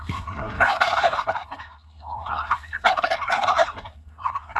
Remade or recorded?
remade